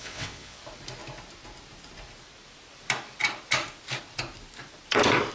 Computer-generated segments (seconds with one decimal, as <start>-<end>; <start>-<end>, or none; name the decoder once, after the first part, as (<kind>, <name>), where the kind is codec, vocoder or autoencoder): 0.0-0.6 (vocoder, WaveNeXt)